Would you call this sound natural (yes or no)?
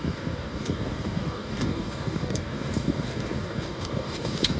no